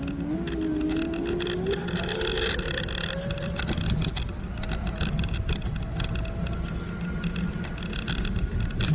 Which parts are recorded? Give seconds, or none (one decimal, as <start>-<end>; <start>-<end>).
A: 0.0-8.9